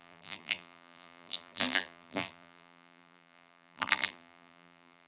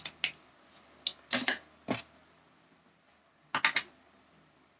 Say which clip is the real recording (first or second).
second